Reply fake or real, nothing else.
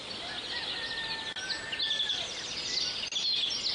real